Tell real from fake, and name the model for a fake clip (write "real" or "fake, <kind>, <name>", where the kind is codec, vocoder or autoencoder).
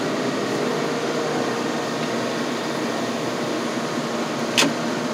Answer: real